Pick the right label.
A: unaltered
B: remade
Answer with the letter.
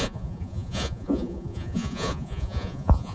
B